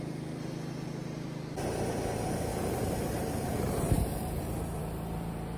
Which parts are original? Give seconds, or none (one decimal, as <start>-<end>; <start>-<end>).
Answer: 0.0-2.5; 4.8-5.6